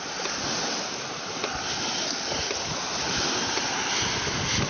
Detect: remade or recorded recorded